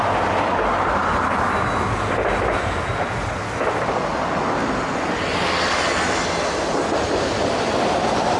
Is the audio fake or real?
real